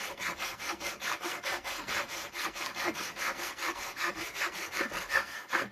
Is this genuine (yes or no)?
no